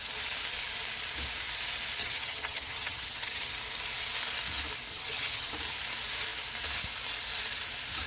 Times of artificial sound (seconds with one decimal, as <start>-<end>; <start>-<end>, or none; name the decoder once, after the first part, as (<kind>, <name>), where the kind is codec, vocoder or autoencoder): 2.0-3.5 (vocoder, HiFi-GAN); 4.9-5.5